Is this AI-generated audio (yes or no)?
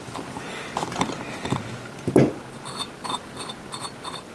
no